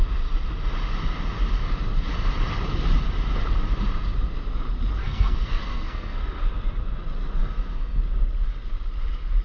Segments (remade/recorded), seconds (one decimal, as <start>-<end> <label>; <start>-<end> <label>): 0.0-5.0 recorded; 5.0-6.4 remade; 6.4-7.4 recorded; 7.4-8.0 remade; 8.0-9.4 recorded